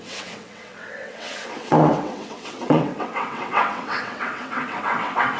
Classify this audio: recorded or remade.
remade